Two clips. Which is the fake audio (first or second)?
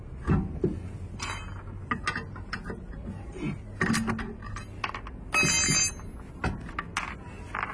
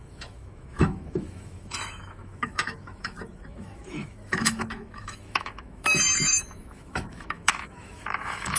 second